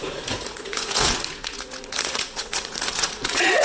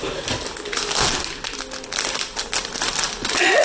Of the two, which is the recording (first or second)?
second